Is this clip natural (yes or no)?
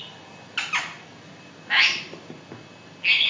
yes